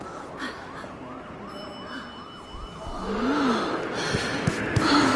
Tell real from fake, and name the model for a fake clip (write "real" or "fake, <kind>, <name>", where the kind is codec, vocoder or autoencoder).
real